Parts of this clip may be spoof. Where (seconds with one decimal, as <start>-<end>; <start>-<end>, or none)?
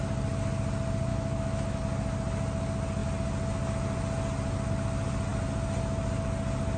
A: 1.1-1.8